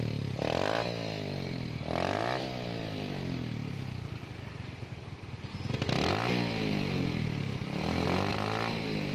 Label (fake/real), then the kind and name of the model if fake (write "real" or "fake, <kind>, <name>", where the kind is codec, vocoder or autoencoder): real